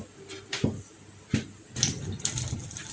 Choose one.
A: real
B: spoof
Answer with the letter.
A